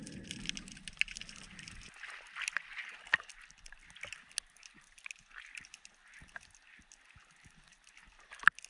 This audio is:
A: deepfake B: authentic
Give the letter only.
B